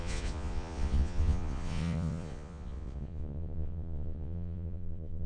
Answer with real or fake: fake